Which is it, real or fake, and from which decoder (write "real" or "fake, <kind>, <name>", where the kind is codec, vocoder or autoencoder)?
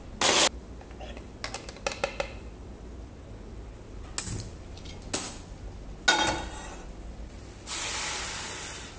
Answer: real